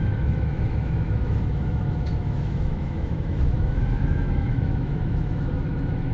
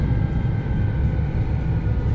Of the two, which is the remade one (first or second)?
first